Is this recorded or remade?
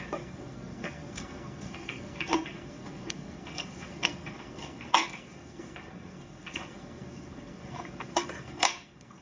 remade